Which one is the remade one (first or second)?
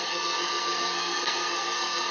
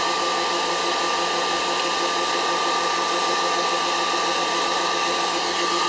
first